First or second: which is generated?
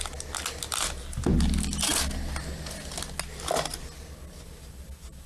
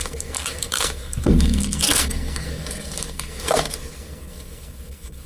second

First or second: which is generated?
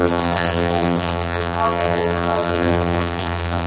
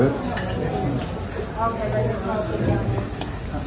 first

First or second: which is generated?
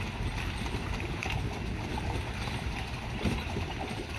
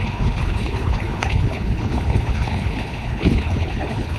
second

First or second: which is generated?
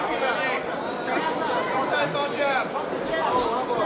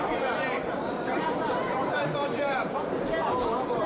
second